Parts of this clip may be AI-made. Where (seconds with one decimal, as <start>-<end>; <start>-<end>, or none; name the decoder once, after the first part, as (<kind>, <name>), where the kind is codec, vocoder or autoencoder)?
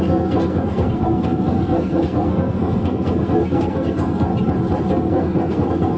0.0-4.3 (codec, SNAC); 4.9-6.0